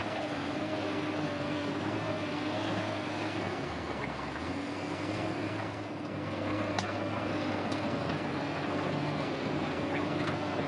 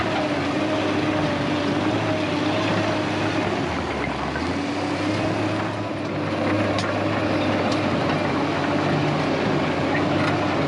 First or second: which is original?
second